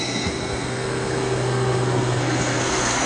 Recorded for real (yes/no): no